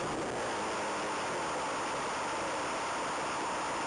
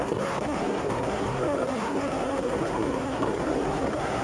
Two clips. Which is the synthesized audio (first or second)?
second